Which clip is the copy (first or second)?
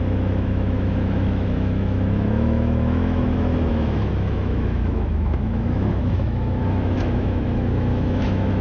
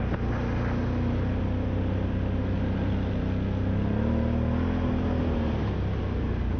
first